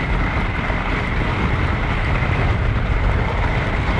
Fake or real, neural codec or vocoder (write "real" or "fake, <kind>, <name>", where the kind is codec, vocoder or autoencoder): real